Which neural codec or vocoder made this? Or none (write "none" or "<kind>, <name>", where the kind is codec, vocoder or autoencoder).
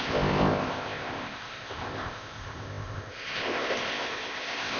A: codec, ZipCodec